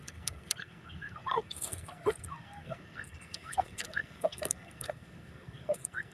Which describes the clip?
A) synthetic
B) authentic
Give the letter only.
A